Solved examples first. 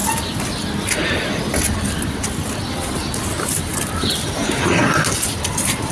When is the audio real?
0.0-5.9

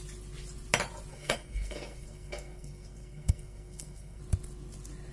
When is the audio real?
0.0-1.1; 4.2-5.1